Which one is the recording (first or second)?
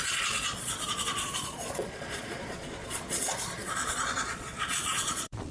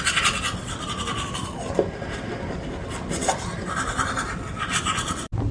second